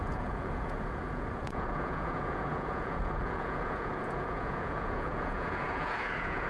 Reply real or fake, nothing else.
fake